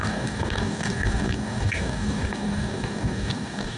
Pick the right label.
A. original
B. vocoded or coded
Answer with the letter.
B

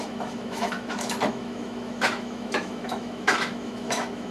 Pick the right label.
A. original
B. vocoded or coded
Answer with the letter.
B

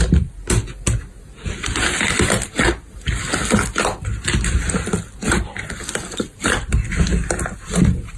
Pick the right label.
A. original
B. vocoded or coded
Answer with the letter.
A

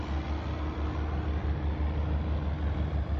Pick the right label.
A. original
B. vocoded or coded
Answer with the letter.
A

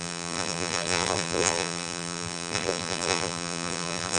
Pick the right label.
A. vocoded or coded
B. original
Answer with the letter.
A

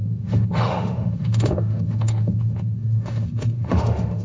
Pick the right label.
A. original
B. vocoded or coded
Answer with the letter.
B